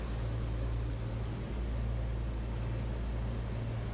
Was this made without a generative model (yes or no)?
yes